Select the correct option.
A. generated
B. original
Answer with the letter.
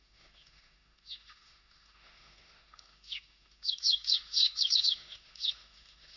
A